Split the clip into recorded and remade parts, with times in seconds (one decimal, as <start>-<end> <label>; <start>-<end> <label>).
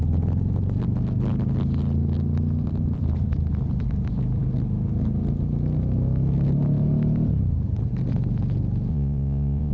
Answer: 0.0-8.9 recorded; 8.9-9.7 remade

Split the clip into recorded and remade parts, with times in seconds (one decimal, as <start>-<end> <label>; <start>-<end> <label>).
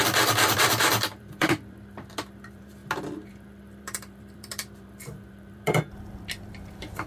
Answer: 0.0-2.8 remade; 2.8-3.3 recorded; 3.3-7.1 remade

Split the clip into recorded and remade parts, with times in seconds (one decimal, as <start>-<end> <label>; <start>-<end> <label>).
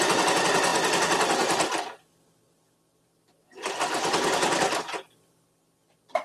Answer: 0.0-6.2 recorded